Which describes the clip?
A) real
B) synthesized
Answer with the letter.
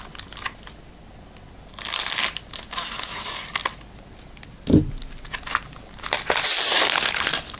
A